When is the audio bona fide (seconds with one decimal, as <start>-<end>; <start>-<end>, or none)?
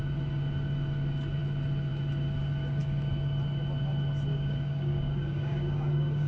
0.0-4.3